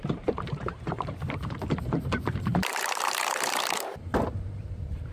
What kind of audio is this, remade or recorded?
remade